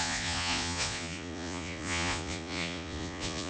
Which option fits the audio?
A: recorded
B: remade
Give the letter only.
B